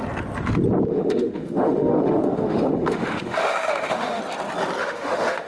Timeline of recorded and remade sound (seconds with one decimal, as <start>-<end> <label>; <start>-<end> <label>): 0.0-0.9 recorded; 0.9-4.2 remade; 4.2-4.8 recorded; 4.8-5.5 remade